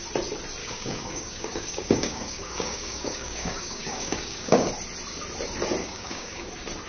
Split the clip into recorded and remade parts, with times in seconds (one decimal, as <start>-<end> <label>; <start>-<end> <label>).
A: 0.0-0.6 recorded; 0.6-4.7 remade; 4.7-5.8 recorded; 5.8-6.5 remade; 6.5-6.9 recorded